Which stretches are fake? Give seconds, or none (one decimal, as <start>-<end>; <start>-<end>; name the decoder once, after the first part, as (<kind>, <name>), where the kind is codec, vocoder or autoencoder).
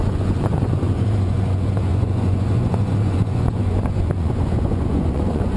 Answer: 0.0-5.6 (vocoder, Vocos)